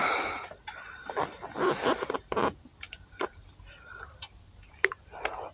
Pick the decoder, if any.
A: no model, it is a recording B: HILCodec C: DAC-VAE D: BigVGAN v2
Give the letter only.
A